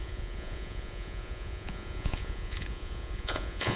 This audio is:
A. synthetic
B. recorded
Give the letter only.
A